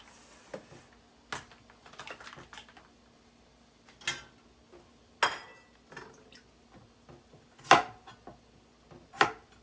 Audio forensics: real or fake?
real